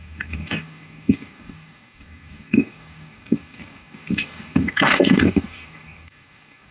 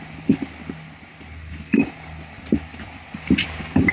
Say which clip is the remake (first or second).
first